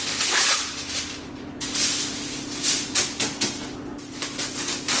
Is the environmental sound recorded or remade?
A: recorded